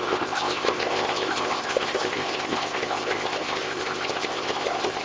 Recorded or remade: remade